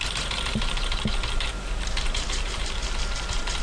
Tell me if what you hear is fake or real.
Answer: fake